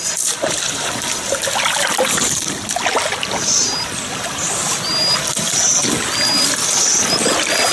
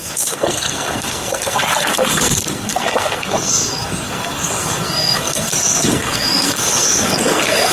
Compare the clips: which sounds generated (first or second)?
second